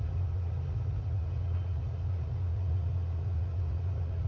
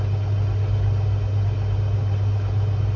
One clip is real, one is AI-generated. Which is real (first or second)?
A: second